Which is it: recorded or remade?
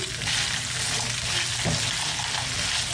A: recorded